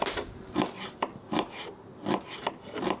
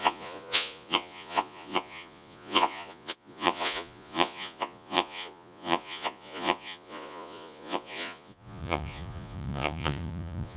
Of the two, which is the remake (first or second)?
second